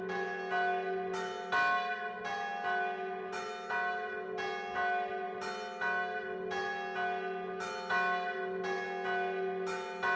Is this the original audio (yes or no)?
yes